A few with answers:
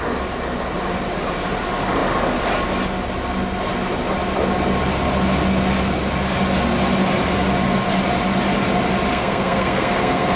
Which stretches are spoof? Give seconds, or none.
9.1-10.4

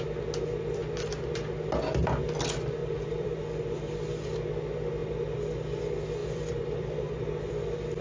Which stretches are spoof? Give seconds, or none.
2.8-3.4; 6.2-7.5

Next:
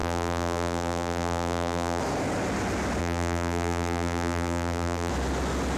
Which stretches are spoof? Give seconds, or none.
0.0-2.0; 3.0-5.1